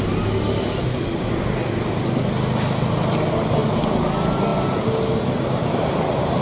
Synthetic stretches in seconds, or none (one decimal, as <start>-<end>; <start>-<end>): none